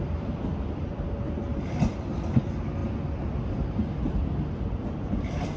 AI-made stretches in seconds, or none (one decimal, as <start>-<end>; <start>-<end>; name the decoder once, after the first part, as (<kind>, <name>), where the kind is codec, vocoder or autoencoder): 0.0-2.8 (vocoder, BigVGAN v2); 4.7-5.6